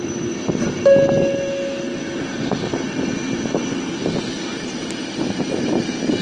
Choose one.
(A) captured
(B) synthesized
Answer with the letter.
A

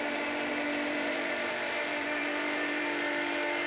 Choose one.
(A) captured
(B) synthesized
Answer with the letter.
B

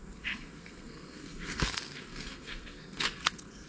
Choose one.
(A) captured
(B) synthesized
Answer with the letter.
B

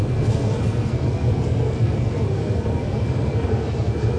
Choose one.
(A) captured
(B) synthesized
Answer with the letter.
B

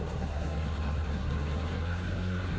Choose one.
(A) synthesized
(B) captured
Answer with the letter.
A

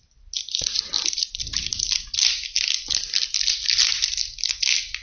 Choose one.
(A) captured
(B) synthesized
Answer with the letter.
A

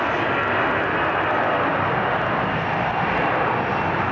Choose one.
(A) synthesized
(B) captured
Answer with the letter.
B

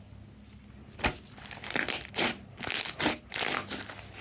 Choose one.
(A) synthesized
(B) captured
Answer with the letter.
B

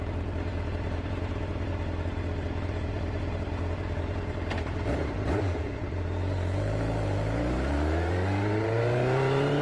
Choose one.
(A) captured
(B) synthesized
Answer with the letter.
B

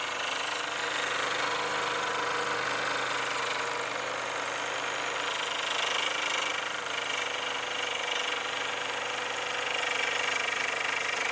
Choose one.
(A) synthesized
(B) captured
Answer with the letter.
B